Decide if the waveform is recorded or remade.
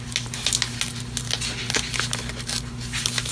recorded